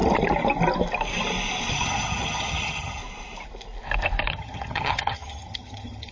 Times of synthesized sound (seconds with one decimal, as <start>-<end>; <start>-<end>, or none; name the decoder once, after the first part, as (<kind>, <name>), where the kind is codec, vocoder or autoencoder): 1.7-3.0 (vocoder, HiFi-GAN); 4.3-6.1